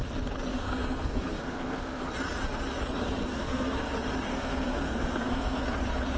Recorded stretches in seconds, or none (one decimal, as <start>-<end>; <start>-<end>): 0.0-0.5; 2.0-3.3; 3.8-4.3; 5.6-6.2